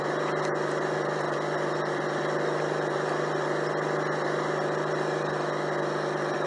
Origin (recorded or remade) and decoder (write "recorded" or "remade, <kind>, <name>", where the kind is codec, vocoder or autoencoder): recorded